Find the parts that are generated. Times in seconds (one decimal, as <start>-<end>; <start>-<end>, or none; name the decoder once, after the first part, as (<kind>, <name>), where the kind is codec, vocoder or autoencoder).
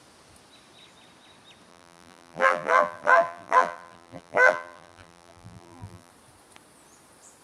1.7-6.1 (vocoder, BigVGAN v2)